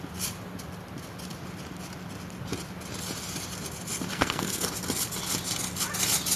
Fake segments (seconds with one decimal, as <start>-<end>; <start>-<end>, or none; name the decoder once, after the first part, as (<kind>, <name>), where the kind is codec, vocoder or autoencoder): 4.1-4.7 (codec, SNAC)